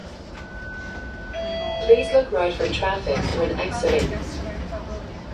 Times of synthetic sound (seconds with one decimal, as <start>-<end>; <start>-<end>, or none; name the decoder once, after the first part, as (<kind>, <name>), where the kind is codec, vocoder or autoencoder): 0.0-0.5 (vocoder, BigVGAN v2)